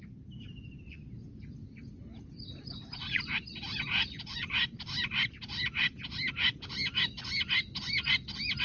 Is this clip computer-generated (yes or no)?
no